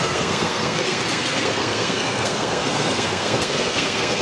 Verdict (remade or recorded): remade